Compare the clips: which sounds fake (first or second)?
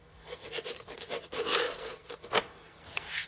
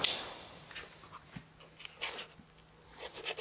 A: first